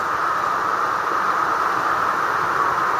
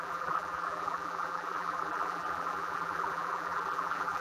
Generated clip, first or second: second